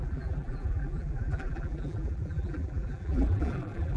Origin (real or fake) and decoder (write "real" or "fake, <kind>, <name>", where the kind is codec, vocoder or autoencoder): fake, vocoder, BigVGAN v2